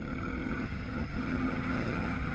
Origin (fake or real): fake